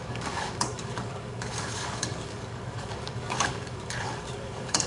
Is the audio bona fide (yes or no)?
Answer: no